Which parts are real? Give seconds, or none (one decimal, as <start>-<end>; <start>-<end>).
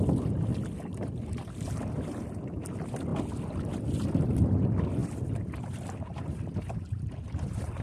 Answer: 0.0-0.9; 1.8-5.0